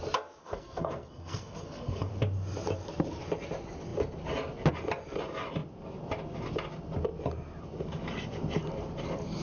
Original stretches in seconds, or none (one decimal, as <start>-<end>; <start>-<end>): 0.0-0.4; 2.1-9.4